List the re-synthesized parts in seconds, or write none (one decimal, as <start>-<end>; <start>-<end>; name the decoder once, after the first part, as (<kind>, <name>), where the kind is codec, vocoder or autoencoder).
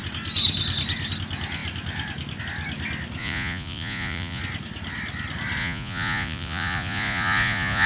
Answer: 3.2-4.4 (vocoder, Vocos); 5.6-7.9